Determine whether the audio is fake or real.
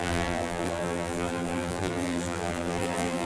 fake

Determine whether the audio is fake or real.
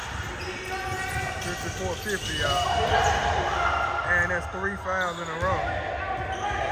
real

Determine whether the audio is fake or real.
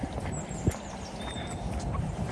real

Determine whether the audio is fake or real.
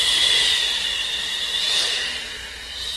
real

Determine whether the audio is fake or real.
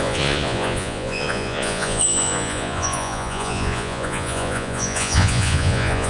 fake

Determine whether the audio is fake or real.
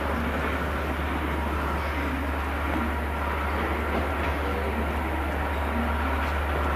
real